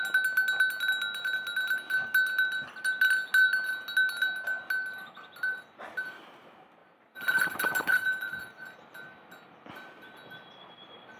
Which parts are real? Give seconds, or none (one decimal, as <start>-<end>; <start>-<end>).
0.0-6.8; 8.4-11.2